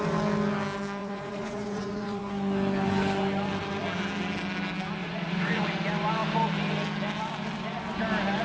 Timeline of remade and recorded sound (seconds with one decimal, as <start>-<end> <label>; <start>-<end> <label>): 0.0-1.0 recorded; 1.0-2.2 remade; 2.2-5.0 recorded; 5.0-5.5 remade; 5.5-8.4 recorded